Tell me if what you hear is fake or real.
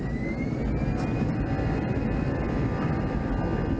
real